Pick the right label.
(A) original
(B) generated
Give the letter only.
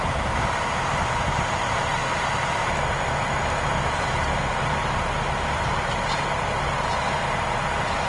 A